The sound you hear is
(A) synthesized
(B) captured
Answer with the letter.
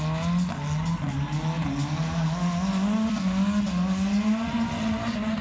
B